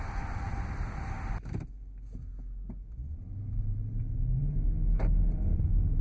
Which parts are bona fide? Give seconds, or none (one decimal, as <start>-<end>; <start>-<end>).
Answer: 0.0-6.0